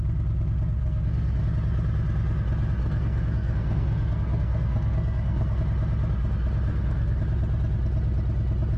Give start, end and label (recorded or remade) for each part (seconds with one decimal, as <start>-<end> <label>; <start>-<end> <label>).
0.0-0.8 recorded; 0.8-1.4 remade; 1.4-2.8 recorded; 2.8-5.6 remade; 5.6-6.7 recorded; 6.7-7.2 remade; 7.2-8.8 recorded